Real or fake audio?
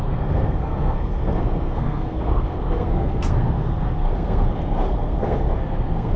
fake